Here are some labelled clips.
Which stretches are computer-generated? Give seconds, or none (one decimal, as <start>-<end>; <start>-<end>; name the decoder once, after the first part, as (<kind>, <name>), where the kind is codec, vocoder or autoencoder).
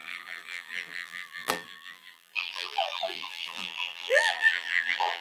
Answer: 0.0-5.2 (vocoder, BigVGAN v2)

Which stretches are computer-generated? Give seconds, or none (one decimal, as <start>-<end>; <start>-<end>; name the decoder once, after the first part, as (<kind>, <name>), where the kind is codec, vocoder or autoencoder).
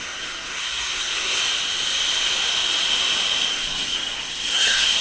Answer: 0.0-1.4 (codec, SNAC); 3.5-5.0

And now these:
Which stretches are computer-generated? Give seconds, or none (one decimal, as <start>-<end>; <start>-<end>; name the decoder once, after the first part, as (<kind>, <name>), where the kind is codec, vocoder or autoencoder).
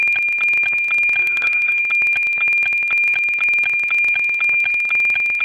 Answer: 1.2-1.8 (codec, SNAC)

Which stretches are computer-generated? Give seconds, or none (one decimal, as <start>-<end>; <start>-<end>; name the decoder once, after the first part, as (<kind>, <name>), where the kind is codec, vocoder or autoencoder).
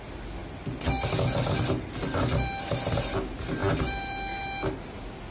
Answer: none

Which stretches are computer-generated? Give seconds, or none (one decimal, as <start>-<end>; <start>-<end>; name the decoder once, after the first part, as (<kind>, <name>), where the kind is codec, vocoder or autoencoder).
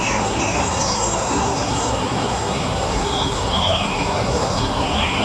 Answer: 0.0-5.2 (codec, SNAC)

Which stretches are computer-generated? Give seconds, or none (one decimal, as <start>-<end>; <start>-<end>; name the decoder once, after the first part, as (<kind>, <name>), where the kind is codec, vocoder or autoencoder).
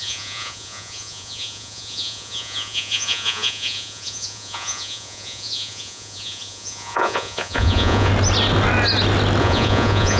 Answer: 0.0-8.1 (vocoder, Vocos); 9.4-10.2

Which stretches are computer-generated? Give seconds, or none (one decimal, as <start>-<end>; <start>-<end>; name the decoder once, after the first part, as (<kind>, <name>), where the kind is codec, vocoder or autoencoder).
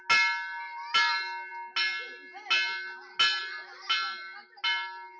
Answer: none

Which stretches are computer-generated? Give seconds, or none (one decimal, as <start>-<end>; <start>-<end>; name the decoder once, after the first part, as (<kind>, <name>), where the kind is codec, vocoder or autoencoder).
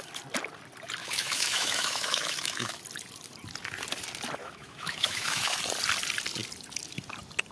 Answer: 1.0-2.8 (autoencoder, DAC-VAE); 4.4-5.6